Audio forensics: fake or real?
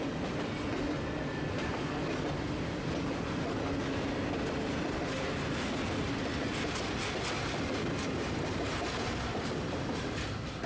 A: real